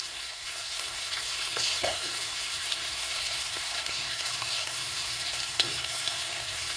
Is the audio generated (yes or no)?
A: yes